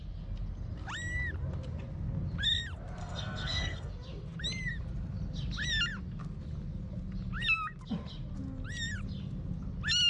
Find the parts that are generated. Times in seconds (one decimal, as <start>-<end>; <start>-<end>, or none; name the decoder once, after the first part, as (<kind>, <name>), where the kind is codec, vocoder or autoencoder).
3.0-3.9 (codec, SNAC)